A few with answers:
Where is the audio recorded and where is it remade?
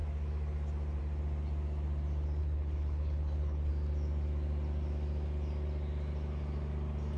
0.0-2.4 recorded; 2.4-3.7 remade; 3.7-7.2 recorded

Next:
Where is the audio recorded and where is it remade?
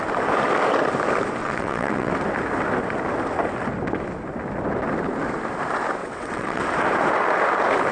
0.0-1.4 recorded; 1.4-2.1 remade; 2.1-6.0 recorded; 6.0-6.6 remade; 6.6-7.9 recorded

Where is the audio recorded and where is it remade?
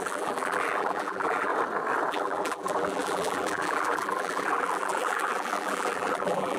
0.0-1.5 remade; 1.5-2.1 recorded; 2.1-6.6 remade